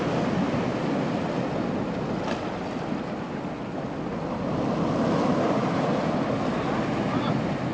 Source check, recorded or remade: recorded